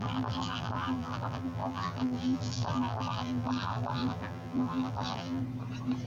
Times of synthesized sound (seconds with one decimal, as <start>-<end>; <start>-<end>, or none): 0.0-5.4